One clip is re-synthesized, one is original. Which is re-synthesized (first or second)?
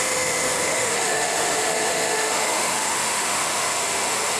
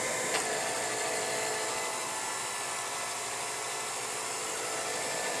first